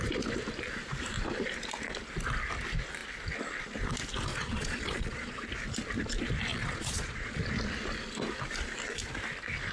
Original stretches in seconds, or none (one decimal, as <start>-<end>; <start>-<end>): 0.0-4.3; 5.4-6.5; 7.4-9.7